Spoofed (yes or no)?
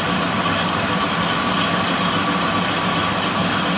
no